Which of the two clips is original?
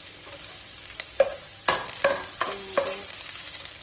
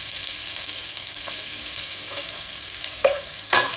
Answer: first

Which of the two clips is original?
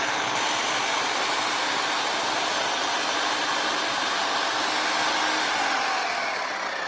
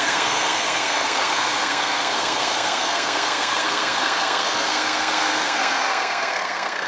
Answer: first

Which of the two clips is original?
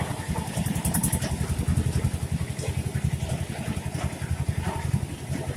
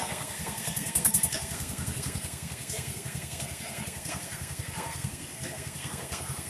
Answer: first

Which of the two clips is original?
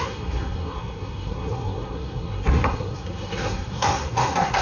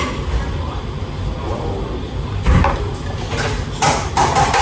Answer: second